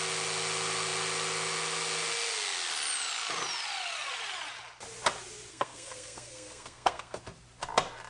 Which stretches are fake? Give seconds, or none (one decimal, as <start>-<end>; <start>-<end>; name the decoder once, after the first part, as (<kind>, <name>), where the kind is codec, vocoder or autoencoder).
5.5-7.2 (codec, SNAC)